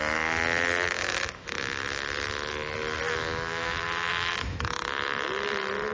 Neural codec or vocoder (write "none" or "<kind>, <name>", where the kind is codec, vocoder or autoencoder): autoencoder, DAC-VAE